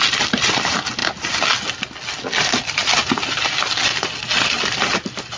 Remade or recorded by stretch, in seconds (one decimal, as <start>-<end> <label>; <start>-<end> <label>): 0.0-5.4 recorded